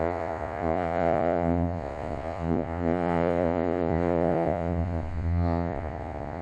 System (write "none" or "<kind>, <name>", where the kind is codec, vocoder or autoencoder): vocoder, Vocos